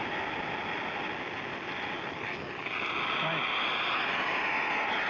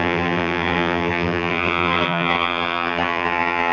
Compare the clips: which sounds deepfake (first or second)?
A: second